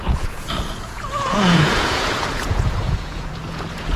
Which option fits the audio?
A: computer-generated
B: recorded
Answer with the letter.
A